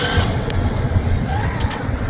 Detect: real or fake fake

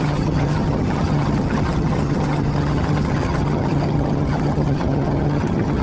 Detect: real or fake fake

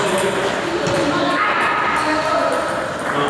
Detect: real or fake real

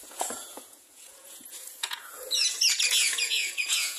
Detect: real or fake fake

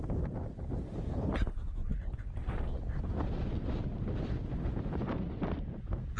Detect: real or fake real